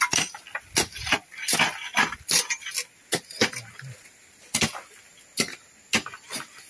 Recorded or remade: recorded